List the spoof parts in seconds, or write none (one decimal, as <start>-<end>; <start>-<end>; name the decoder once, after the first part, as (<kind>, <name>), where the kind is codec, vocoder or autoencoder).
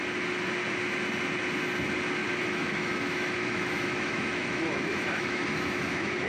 2.2-6.3 (autoencoder, DAC-VAE)